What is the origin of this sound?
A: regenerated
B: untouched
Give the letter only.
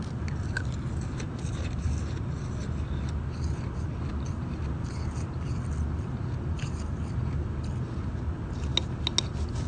B